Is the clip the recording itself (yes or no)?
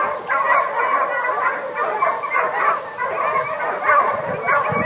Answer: yes